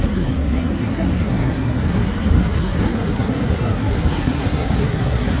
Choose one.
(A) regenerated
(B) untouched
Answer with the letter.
A